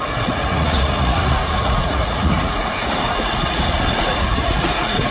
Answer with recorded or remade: remade